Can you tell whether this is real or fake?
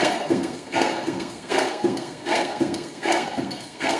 fake